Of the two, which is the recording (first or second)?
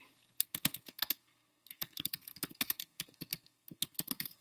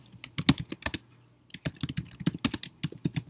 second